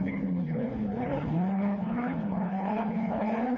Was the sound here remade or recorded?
remade